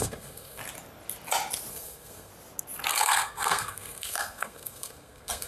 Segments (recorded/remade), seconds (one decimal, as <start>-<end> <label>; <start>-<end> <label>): 0.0-0.6 remade; 0.6-1.7 recorded; 1.7-2.3 remade; 2.3-2.9 recorded; 2.9-5.5 remade